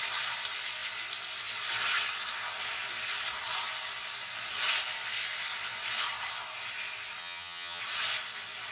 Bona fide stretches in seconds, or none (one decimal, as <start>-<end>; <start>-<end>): 0.0-7.2; 7.8-8.7